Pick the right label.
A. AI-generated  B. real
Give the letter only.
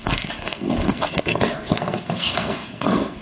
A